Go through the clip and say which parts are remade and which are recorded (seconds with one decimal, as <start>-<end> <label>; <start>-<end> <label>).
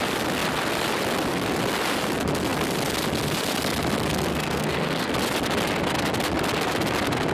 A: 0.0-4.3 recorded; 4.3-5.1 remade; 5.1-7.3 recorded